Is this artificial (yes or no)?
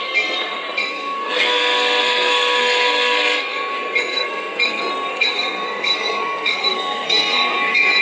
yes